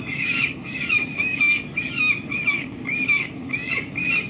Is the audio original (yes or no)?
no